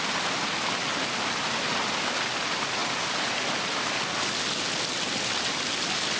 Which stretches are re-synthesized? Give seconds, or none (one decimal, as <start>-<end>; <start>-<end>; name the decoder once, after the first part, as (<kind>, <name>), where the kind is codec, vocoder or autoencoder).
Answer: none